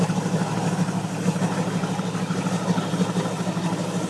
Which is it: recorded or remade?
recorded